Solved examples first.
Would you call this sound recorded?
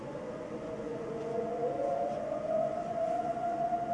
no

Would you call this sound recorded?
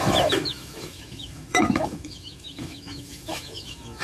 no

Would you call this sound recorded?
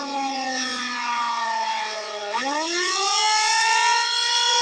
no